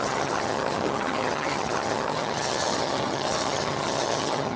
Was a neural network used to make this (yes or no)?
yes